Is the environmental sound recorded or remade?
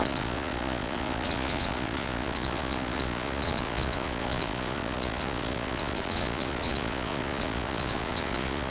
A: remade